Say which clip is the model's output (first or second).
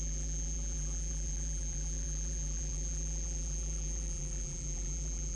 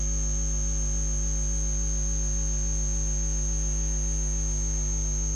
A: first